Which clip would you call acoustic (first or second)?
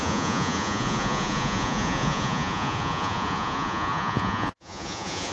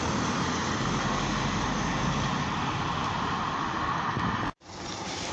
second